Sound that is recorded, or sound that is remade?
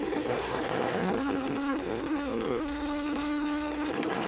remade